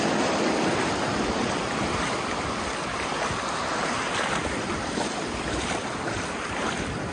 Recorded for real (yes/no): no